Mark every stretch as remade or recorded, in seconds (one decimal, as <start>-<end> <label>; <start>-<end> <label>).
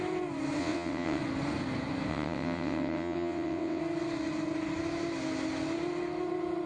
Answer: 0.0-0.6 recorded; 0.6-1.2 remade; 1.2-2.1 recorded; 2.1-3.8 remade; 3.8-6.7 recorded